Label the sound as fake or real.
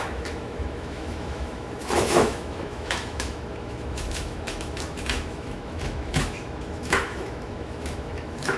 fake